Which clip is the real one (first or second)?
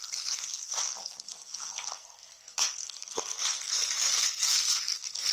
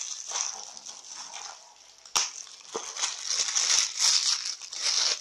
second